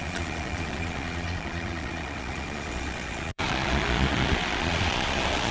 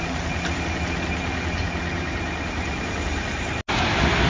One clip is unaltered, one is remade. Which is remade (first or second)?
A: first